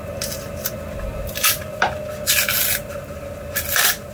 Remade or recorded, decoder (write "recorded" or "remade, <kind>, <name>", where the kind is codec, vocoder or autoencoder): recorded